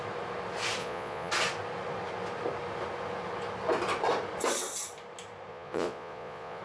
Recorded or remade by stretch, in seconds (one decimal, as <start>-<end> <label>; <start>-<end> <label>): 0.0-0.8 recorded; 0.8-1.3 remade; 1.3-5.5 recorded; 5.5-6.6 remade